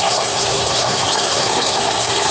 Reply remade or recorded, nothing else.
remade